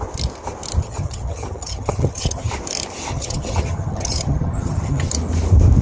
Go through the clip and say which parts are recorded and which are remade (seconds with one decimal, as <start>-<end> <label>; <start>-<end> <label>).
0.0-0.8 recorded; 0.8-2.5 remade; 2.5-3.1 recorded; 3.1-5.1 remade; 5.1-5.8 recorded